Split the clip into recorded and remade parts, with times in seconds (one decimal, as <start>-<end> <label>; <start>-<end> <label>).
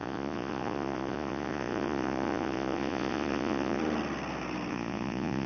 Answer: 0.0-3.8 remade; 3.8-4.7 recorded; 4.7-5.5 remade